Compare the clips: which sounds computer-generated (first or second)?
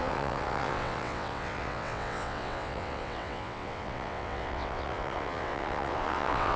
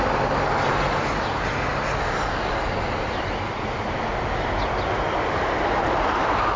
first